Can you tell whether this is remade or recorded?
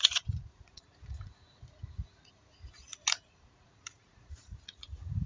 remade